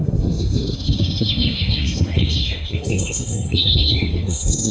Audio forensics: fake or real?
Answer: fake